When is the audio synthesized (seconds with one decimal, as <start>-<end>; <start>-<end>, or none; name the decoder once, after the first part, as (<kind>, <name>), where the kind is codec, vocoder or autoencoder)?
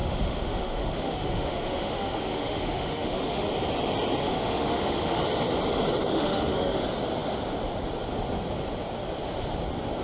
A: 0.0-3.5 (autoencoder, DAC-VAE); 4.2-5.2; 6.1-6.8